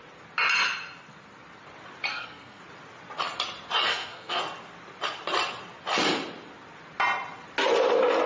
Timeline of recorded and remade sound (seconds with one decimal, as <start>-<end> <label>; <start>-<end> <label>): 0.0-2.1 recorded; 2.1-2.6 remade; 2.6-3.9 recorded; 3.9-4.4 remade; 4.4-8.3 recorded